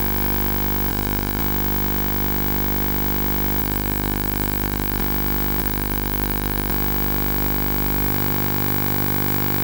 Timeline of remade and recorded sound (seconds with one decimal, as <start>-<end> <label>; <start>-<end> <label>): 0.0-0.9 recorded; 0.9-1.4 remade; 1.4-3.6 recorded; 3.6-5.0 remade; 5.0-5.6 recorded; 5.6-6.7 remade; 6.7-9.6 recorded